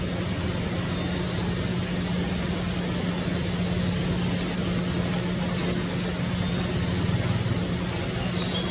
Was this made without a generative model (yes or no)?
yes